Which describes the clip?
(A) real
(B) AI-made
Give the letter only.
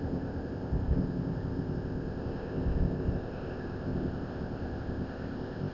B